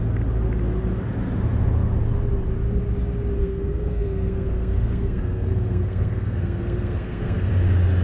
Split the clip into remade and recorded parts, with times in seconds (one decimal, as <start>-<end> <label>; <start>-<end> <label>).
0.0-3.4 recorded; 3.4-7.5 remade; 7.5-8.0 recorded

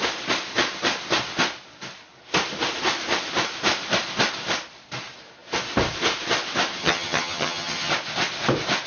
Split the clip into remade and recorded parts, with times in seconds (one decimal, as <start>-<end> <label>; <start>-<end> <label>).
0.0-6.8 recorded; 6.8-7.9 remade; 7.9-8.9 recorded